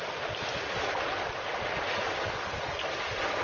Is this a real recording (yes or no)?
yes